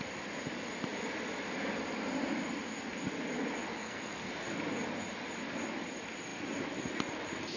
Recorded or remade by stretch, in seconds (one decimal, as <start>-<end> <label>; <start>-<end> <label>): 0.0-3.7 recorded; 3.7-4.3 remade; 4.3-7.6 recorded